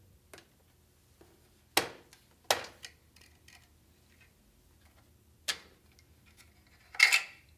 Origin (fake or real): real